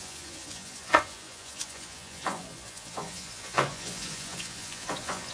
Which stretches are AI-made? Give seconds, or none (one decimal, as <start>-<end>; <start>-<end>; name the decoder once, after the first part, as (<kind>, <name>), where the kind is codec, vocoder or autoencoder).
0.0-5.3 (vocoder, Vocos)